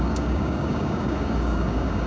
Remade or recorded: remade